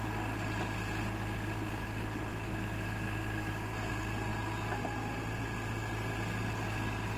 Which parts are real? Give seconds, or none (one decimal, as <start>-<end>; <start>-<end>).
0.0-2.3; 3.9-7.2